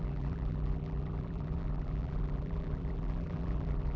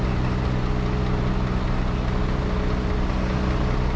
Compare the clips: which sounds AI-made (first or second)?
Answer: first